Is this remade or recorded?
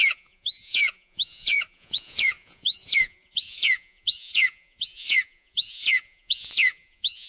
remade